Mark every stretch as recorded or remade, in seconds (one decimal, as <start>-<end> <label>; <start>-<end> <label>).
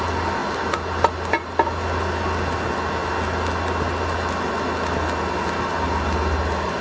0.0-6.8 recorded